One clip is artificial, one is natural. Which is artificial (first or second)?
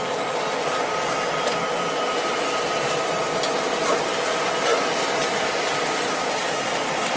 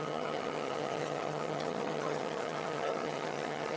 second